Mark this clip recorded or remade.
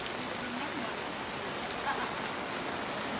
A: recorded